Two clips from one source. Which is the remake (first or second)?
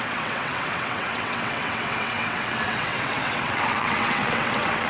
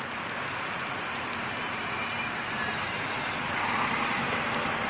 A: first